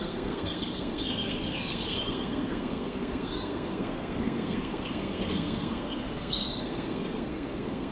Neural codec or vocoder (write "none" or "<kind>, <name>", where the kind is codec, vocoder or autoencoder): codec, SNAC